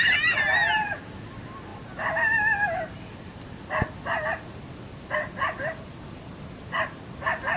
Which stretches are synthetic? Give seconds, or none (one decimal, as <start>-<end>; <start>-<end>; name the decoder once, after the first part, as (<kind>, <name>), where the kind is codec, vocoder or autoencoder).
none